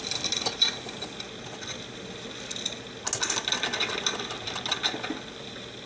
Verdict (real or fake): real